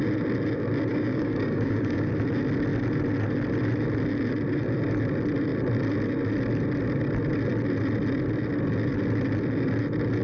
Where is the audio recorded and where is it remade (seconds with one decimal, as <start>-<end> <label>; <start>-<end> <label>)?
0.0-0.9 recorded; 0.9-2.1 remade; 2.1-10.2 recorded